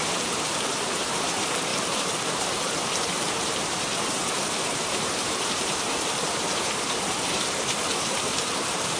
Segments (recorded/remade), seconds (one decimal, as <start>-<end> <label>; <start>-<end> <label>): 0.0-9.0 remade